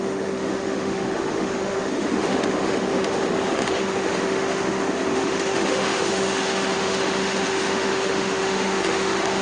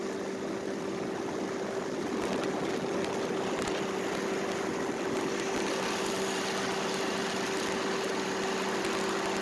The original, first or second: second